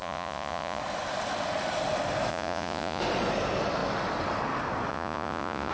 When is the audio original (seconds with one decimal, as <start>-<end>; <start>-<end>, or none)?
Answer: 0.8-2.3; 3.0-4.9